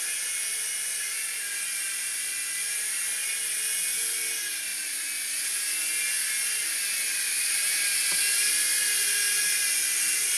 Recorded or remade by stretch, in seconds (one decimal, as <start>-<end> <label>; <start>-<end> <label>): 0.0-10.4 recorded